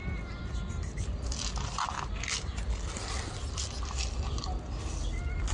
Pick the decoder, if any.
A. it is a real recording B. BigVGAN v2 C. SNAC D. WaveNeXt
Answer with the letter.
A